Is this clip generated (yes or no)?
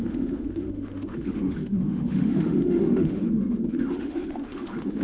yes